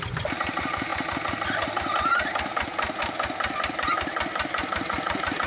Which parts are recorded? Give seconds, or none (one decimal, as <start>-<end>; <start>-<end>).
0.0-5.5